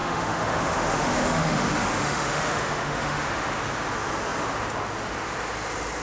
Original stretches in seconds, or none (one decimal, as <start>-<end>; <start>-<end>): 3.6-6.0